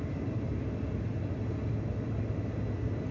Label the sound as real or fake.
real